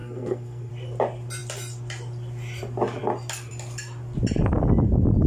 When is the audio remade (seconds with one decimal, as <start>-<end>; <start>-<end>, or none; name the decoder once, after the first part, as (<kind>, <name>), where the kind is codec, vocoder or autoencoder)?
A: 0.0-0.7 (codec, SNAC)